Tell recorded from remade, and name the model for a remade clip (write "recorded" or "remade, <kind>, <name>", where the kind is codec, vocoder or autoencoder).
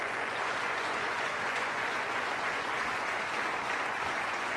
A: remade, vocoder, Vocos